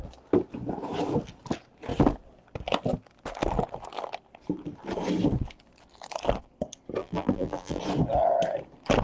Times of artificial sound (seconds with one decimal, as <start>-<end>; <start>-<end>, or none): 7.0-7.8